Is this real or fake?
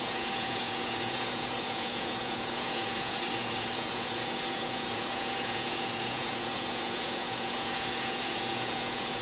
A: fake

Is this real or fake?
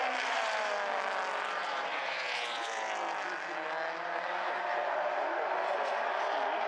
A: real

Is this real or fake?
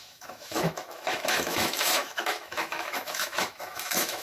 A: fake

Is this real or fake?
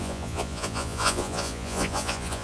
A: fake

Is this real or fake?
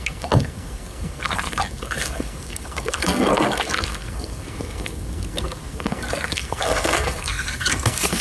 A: fake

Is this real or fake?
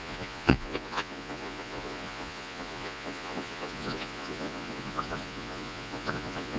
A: fake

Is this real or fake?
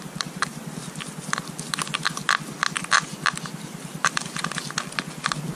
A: real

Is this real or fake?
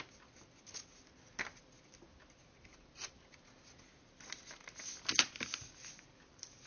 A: real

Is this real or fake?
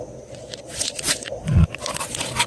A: fake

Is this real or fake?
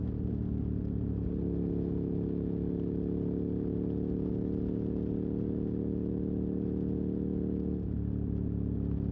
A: real